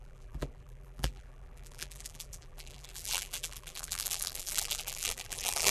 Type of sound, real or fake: fake